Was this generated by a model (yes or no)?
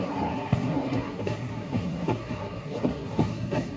yes